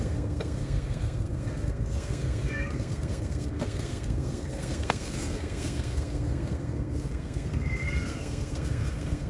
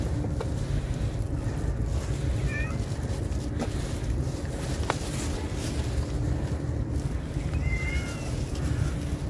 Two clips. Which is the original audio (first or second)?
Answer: second